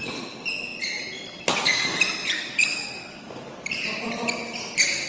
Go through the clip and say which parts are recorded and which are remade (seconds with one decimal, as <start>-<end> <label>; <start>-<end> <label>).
0.0-5.1 recorded